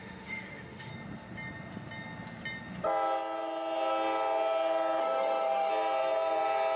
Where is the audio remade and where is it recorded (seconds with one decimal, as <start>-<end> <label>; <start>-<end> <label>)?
0.0-0.9 remade; 0.9-5.0 recorded; 5.0-5.7 remade; 5.7-6.8 recorded